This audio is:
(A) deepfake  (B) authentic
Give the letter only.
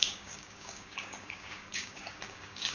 A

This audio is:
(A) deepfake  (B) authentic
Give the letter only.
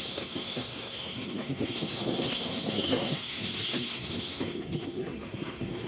A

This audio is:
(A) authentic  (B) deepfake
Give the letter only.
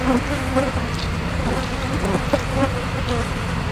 A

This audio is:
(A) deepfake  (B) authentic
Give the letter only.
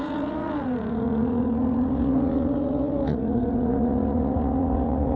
A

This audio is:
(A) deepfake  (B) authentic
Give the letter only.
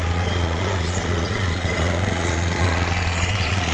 A